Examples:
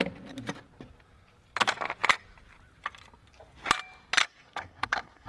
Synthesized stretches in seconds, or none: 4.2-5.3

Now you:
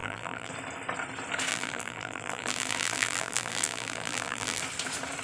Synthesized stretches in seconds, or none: 0.0-0.5; 1.5-4.6

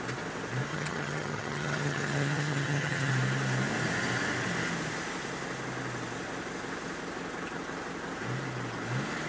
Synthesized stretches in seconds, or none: 0.7-3.1

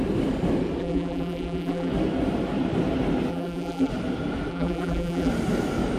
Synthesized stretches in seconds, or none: 0.8-1.9; 3.3-3.9; 4.5-5.3